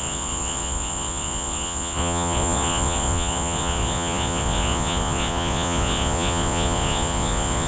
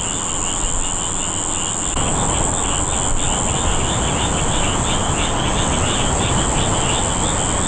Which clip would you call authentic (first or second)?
second